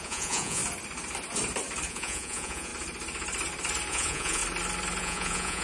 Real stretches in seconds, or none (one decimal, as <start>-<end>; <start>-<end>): 0.6-1.9; 2.7-3.9; 4.4-5.0